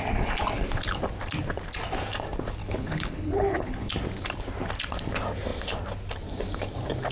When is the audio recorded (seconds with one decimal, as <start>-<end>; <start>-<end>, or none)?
0.0-2.6; 3.9-7.1